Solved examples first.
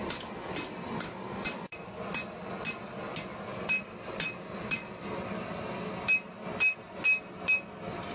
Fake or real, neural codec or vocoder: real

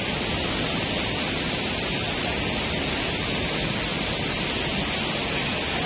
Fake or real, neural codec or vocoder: real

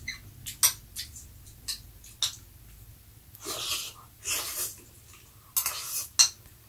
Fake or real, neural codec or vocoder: real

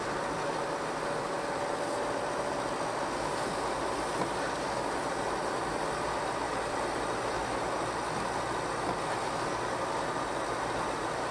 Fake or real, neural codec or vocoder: real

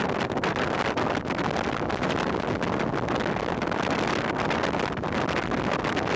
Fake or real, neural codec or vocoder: real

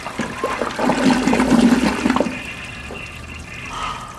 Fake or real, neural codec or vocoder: real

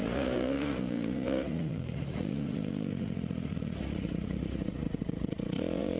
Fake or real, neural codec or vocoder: fake, vocoder, Vocos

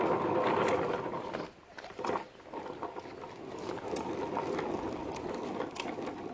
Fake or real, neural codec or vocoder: real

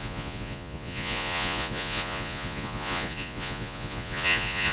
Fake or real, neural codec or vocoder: fake, vocoder, Vocos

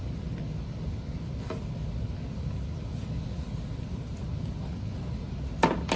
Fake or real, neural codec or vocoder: real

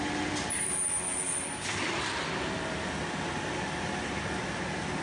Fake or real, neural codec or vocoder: real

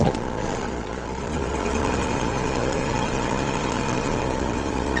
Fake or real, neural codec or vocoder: fake, vocoder, Vocos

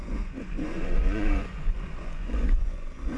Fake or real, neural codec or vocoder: fake, vocoder, Vocos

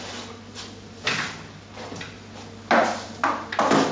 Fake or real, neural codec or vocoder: real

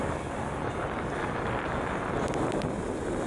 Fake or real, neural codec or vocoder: real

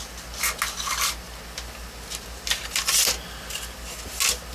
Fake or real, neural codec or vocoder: real